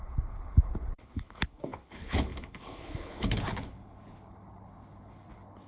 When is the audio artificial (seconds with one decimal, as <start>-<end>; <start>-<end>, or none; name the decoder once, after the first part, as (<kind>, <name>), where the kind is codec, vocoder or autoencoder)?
0.0-5.7 (codec, HILCodec)